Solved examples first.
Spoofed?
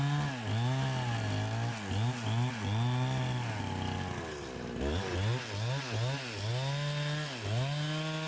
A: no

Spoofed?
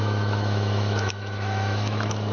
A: yes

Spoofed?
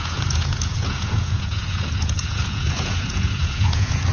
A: yes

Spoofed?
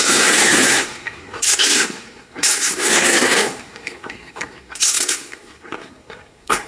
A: yes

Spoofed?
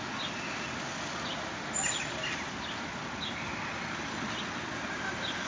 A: no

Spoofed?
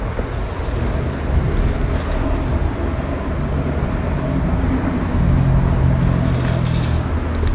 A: no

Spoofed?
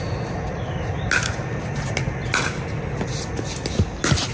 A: no